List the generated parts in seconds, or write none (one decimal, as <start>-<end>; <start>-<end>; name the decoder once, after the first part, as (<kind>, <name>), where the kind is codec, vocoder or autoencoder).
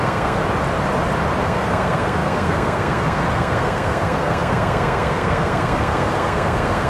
0.0-0.4 (codec, SNAC); 1.4-6.9